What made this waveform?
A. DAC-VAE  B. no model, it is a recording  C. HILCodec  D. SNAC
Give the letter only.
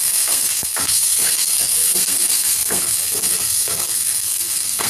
D